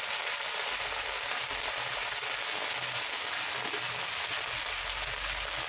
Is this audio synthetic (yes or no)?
no